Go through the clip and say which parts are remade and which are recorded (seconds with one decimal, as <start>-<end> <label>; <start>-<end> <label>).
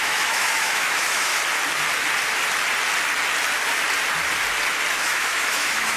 0.0-1.3 remade; 1.3-4.9 recorded; 4.9-6.0 remade